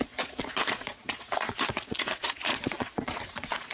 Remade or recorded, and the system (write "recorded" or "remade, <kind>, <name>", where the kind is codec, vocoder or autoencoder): remade, vocoder, Vocos